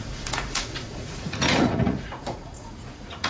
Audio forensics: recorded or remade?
remade